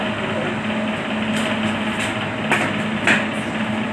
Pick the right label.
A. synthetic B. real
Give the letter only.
B